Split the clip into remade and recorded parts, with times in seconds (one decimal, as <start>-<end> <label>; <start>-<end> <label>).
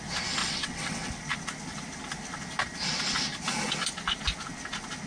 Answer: 0.0-0.4 recorded; 0.4-1.1 remade; 1.1-5.1 recorded